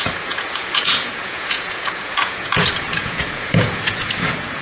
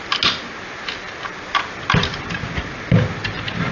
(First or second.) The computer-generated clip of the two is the first